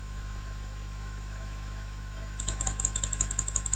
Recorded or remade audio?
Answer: remade